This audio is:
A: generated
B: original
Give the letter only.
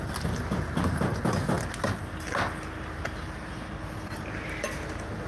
B